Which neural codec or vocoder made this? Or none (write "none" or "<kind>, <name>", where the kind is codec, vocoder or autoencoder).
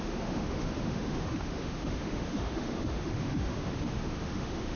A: autoencoder, DAC-VAE